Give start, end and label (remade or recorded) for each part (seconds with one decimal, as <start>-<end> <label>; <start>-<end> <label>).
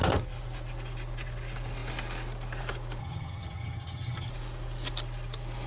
0.0-3.0 recorded; 3.0-4.3 remade; 4.3-5.7 recorded